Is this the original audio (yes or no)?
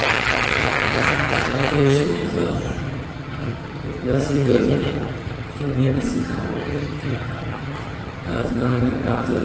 no